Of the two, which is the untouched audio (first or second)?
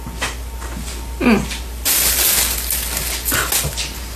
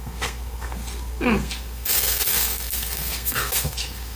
first